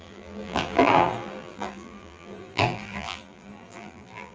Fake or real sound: fake